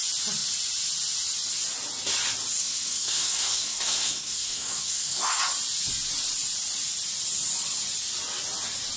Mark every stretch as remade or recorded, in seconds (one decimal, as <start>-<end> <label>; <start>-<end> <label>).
0.0-2.6 recorded; 2.6-5.4 remade; 5.4-9.0 recorded